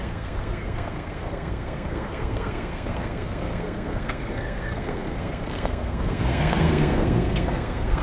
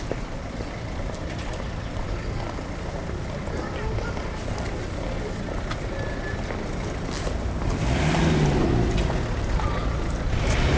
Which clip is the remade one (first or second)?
first